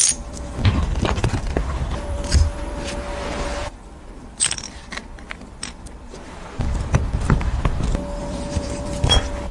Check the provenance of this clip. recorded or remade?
remade